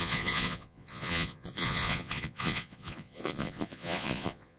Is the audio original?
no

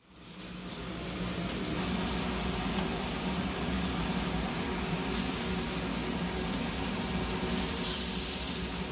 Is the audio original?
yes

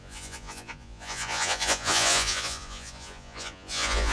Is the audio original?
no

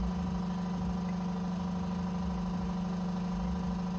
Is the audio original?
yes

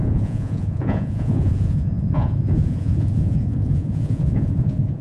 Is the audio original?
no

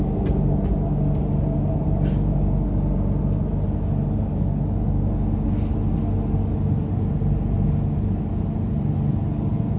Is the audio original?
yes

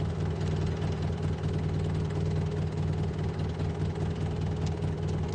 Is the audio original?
yes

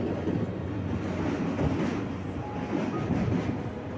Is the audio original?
yes